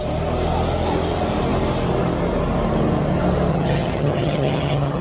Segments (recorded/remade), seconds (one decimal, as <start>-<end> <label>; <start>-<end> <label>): 0.0-3.5 recorded; 3.5-5.0 remade

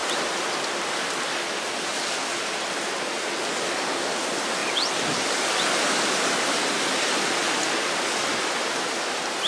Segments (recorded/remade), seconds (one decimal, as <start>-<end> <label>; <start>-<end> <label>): 0.0-9.5 recorded

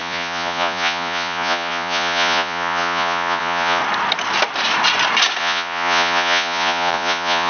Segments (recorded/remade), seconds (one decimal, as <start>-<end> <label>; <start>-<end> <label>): 0.0-3.8 remade; 3.8-5.4 recorded; 5.4-7.5 remade

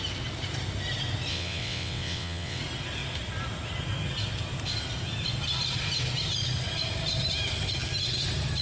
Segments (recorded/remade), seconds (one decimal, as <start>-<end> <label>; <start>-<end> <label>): 0.0-1.3 recorded; 1.3-2.6 remade; 2.6-8.6 recorded

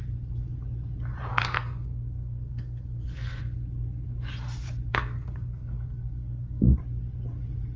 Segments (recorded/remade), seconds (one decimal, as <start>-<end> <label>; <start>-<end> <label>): 0.0-1.3 recorded; 1.3-3.4 remade; 3.4-4.9 recorded; 4.9-6.8 remade; 6.8-7.8 recorded

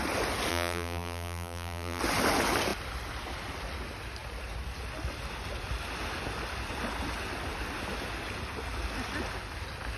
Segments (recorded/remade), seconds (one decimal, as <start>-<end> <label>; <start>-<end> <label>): 0.0-0.5 recorded; 0.5-2.0 remade; 2.0-10.0 recorded

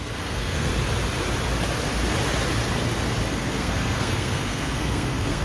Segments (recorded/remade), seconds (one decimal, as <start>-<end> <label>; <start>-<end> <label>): 0.0-0.7 remade; 0.7-3.3 recorded; 3.3-5.4 remade

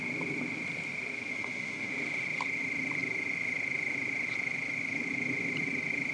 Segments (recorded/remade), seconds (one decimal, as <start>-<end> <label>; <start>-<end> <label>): 0.0-1.3 recorded; 1.3-1.9 remade; 1.9-6.1 recorded